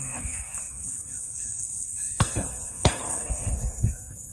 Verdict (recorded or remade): remade